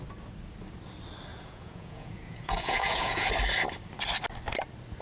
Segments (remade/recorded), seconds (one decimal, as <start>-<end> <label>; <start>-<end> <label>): 0.0-1.3 recorded; 1.3-3.3 remade; 3.3-5.0 recorded